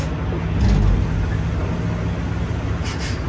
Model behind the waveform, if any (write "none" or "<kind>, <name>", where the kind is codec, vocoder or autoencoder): none